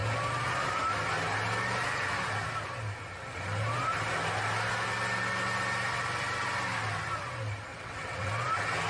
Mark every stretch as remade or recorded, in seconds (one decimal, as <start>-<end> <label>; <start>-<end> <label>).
0.0-7.7 recorded; 7.7-8.3 remade; 8.3-8.9 recorded